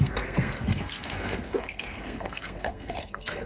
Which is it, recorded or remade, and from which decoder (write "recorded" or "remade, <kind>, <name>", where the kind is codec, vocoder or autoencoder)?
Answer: remade, codec, SNAC